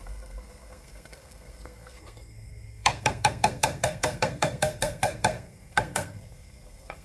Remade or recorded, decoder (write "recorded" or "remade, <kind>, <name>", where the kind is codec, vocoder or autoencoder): remade, codec, SNAC